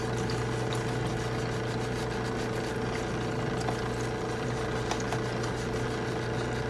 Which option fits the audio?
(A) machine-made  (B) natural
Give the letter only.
B